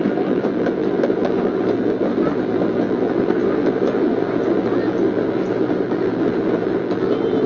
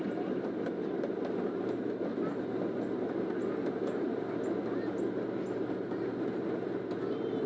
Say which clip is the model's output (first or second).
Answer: first